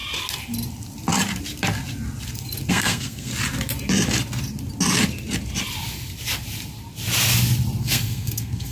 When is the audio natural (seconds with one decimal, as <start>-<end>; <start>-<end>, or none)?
0.0-2.7; 3.3-7.8